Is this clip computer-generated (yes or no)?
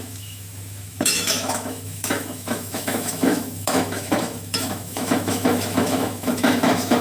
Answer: yes